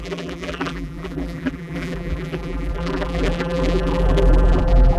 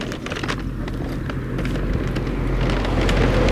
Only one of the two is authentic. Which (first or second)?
second